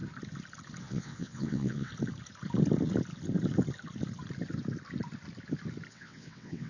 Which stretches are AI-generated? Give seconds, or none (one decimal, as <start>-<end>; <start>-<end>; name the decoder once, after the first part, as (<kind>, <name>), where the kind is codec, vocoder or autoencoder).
0.8-1.9 (vocoder, WaveNeXt); 5.9-6.7